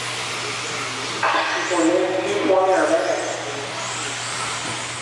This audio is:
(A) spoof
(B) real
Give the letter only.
B